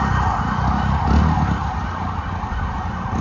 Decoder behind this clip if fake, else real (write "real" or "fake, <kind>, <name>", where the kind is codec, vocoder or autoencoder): real